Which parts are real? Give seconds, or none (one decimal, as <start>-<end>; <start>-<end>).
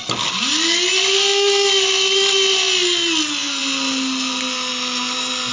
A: 0.0-5.5